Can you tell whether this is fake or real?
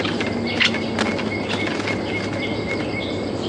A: real